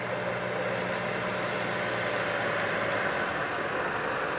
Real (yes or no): yes